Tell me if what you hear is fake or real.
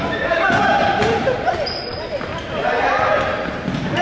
real